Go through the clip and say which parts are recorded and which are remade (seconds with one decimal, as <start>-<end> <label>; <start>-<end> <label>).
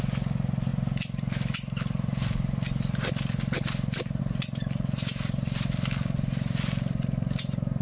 0.0-7.8 recorded